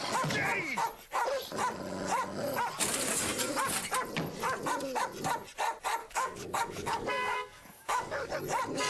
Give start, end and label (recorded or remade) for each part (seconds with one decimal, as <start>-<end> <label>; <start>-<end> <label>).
0.0-6.0 recorded; 6.0-8.3 remade; 8.3-8.9 recorded